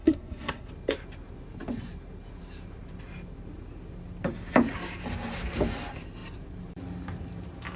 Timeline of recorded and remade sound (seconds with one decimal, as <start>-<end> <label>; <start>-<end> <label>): 0.0-0.7 remade; 0.7-7.8 recorded